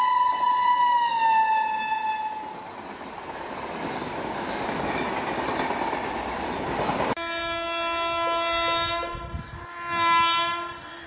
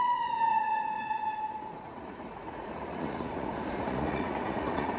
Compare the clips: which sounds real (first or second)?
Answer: first